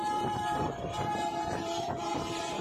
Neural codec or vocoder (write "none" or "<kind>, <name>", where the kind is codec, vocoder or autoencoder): vocoder, BigVGAN v2